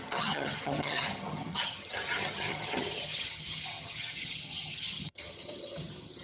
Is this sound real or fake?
fake